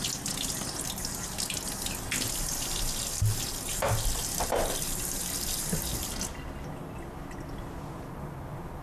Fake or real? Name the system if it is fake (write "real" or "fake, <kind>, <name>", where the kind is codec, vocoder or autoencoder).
real